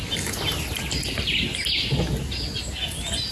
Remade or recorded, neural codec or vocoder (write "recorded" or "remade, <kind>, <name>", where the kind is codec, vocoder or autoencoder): recorded